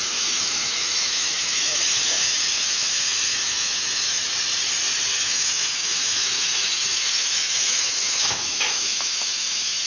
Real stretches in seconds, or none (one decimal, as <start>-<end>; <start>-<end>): 4.2-5.2

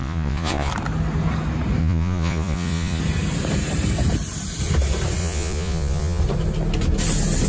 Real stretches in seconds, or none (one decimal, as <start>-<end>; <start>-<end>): 0.7-1.8; 3.0-5.2; 6.2-7.5

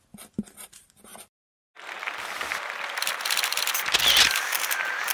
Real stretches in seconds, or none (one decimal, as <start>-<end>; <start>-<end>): 0.0-1.1; 4.0-5.1

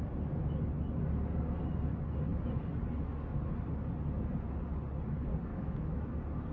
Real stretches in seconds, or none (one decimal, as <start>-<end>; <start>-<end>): 0.0-5.5; 6.1-6.5

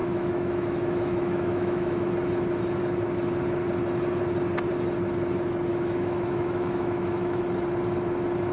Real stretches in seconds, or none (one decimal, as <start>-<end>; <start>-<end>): 2.1-5.7; 7.4-8.5